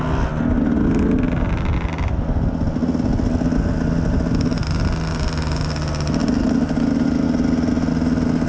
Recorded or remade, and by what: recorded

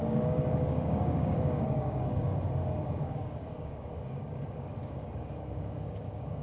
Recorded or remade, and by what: remade, codec, DAC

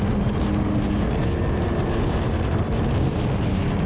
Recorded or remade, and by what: recorded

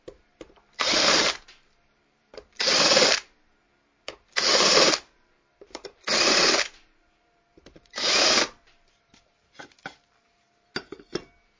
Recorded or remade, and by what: remade, vocoder, BigVGAN v2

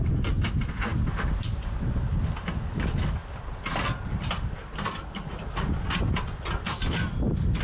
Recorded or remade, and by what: recorded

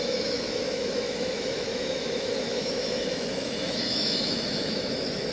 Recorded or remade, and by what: remade, autoencoder, DAC-VAE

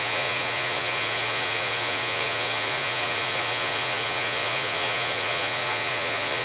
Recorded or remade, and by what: remade, vocoder, Vocos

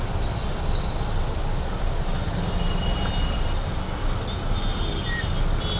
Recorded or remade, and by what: recorded